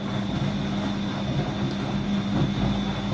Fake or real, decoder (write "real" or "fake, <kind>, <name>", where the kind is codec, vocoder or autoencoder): real